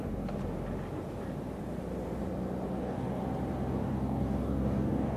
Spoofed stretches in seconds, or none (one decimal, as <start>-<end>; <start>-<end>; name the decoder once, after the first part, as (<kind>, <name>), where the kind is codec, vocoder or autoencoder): 0.0-0.4 (codec, DAC); 2.8-3.2; 3.7-5.2